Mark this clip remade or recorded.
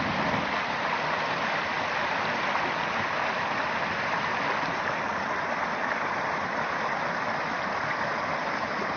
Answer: recorded